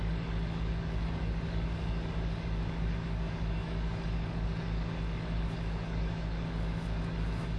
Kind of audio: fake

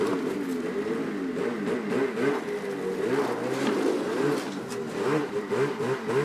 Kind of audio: real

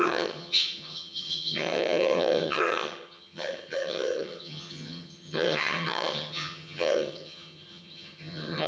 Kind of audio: fake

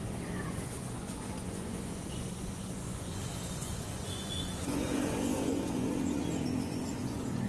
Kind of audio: fake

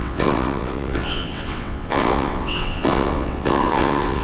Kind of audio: fake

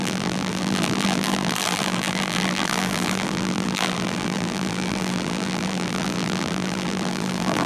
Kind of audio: fake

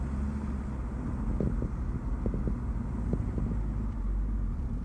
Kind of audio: real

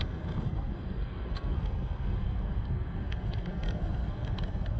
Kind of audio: fake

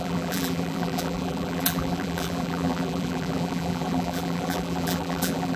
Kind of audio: fake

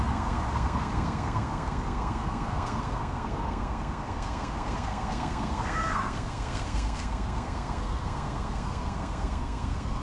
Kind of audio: fake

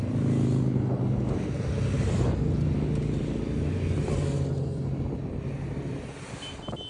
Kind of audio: real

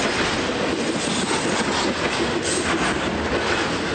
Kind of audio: real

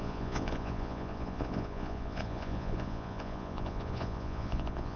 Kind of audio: fake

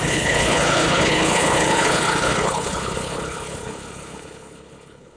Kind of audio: fake